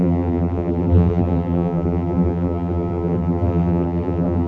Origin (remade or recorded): remade